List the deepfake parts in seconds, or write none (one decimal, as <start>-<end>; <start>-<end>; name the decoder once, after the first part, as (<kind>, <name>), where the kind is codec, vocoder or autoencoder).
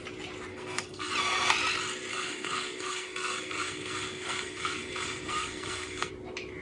0.5-1.1 (codec, SNAC); 2.1-6.1